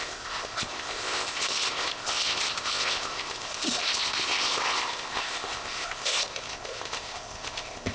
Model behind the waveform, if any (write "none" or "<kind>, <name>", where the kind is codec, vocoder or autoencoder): codec, ZipCodec